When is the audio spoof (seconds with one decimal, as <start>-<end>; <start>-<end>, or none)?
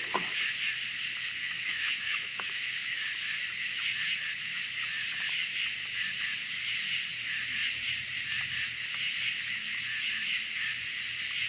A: 1.4-2.6